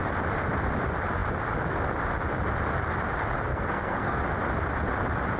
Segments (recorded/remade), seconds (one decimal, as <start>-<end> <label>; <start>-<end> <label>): 0.0-3.5 recorded; 3.5-4.2 remade; 4.2-5.4 recorded